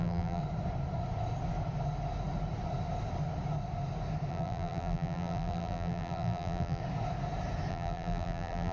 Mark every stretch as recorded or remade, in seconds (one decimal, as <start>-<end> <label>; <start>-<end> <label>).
0.0-0.4 remade; 0.4-4.3 recorded; 4.3-6.8 remade; 6.8-7.7 recorded; 7.7-8.7 remade